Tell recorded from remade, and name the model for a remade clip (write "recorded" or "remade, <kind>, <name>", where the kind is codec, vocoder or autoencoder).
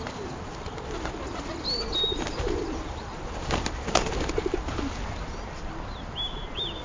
recorded